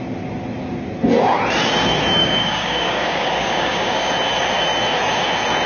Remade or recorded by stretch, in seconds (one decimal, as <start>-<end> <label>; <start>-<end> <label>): 0.0-2.2 recorded; 2.2-4.1 remade; 4.1-5.7 recorded